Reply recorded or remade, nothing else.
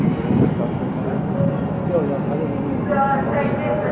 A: recorded